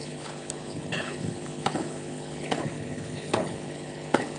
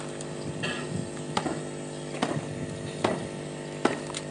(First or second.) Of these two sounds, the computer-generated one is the first